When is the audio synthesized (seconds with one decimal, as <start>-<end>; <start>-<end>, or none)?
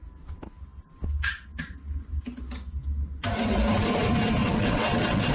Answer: 4.4-5.3